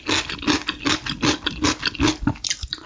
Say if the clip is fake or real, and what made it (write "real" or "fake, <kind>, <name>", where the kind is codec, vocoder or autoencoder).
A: real